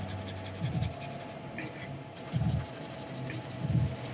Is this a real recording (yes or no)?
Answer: yes